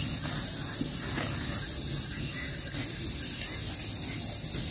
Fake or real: real